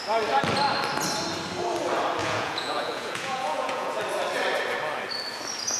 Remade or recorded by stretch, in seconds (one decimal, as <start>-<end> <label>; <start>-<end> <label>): 0.0-2.2 recorded; 2.2-4.0 remade; 4.0-5.8 recorded